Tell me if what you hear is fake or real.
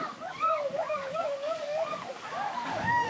fake